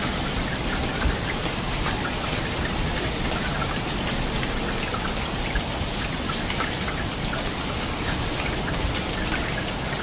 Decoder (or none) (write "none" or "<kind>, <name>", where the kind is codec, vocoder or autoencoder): none